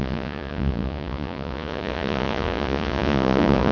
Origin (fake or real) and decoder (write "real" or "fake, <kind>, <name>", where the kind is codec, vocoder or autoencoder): fake, vocoder, Vocos